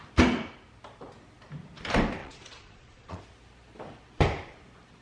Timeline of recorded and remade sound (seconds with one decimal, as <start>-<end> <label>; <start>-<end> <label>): 0.0-2.2 recorded; 2.2-3.2 remade; 3.2-5.0 recorded